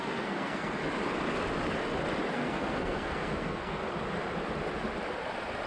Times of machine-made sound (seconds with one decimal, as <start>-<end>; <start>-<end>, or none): 0.0-0.8; 2.3-3.8